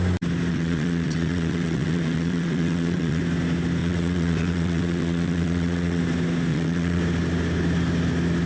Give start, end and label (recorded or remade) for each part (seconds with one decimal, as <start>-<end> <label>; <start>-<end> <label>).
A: 0.0-0.5 recorded; 0.5-3.2 remade; 3.2-3.8 recorded; 3.8-6.0 remade; 6.0-6.5 recorded; 6.5-7.0 remade; 7.0-8.5 recorded